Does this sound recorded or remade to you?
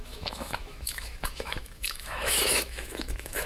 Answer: remade